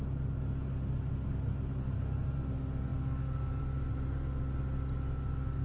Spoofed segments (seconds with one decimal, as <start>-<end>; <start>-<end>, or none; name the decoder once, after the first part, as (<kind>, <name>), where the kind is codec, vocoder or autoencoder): none